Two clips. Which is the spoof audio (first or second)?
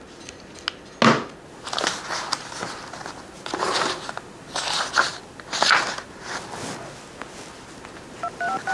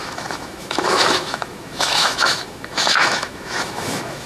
second